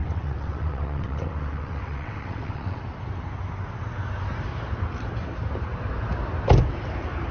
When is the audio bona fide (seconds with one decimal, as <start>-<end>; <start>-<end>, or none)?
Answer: 2.8-7.3